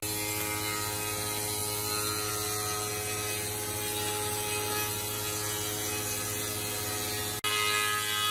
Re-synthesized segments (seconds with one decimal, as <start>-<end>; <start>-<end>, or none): none